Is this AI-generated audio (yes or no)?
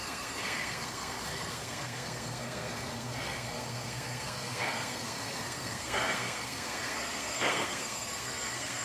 yes